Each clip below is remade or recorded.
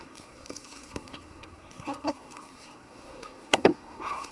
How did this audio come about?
remade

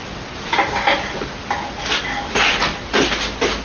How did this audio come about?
recorded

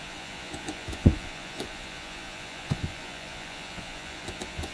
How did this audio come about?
remade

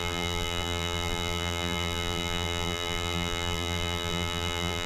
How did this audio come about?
remade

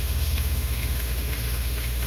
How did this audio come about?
remade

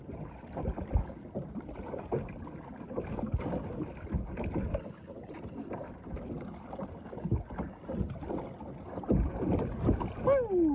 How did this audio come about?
recorded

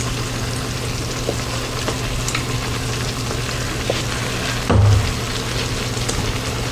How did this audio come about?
recorded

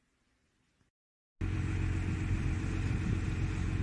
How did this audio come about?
recorded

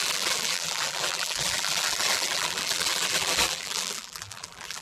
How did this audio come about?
remade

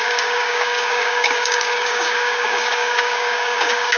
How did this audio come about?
remade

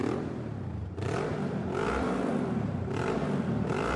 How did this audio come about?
recorded